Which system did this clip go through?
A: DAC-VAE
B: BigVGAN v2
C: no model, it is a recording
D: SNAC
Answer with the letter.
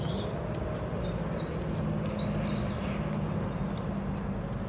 C